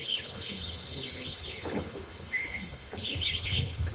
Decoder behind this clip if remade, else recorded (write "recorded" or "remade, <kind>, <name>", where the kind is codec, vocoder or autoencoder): remade, codec, HILCodec